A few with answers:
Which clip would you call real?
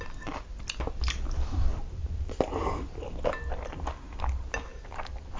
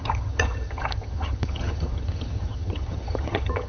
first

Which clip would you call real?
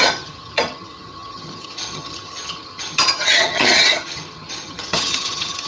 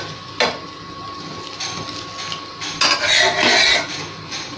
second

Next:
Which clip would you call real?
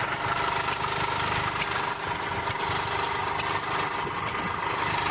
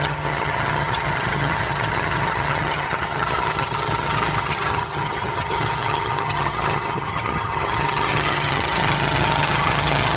first